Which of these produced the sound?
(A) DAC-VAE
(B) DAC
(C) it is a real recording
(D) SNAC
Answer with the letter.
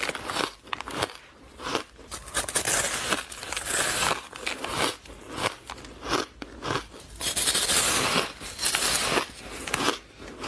C